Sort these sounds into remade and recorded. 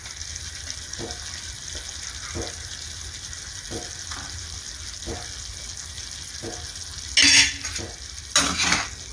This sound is recorded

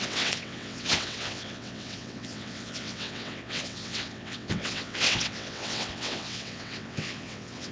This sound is remade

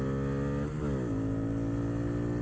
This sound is recorded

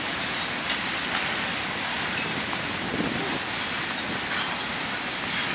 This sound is recorded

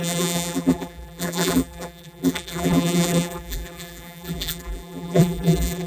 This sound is remade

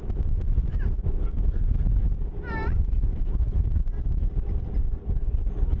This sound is recorded